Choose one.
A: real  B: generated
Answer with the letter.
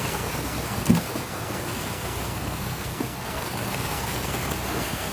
B